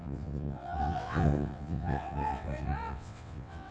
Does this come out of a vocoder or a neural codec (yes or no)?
yes